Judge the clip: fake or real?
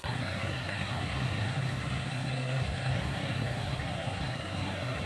fake